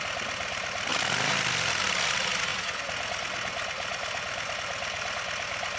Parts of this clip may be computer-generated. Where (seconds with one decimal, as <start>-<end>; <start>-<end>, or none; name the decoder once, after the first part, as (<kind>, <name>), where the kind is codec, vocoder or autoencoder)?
none